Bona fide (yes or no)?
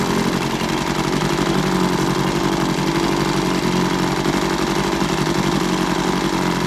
yes